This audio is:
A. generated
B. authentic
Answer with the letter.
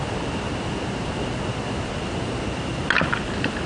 B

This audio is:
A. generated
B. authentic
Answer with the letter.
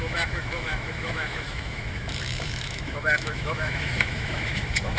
A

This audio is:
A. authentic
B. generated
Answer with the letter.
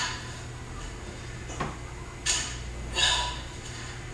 A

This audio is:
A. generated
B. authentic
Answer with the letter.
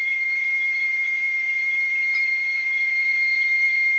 A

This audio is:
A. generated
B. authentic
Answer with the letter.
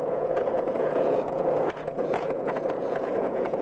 A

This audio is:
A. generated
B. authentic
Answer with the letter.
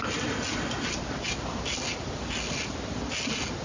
B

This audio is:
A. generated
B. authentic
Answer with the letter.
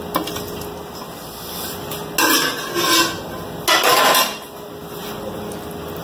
B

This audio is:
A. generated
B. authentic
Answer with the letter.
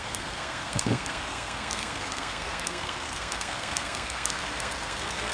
A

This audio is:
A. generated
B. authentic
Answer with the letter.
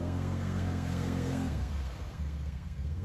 A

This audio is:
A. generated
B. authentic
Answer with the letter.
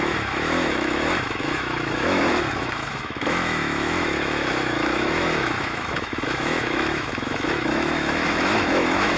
A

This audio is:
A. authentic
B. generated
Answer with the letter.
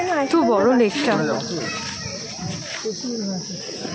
A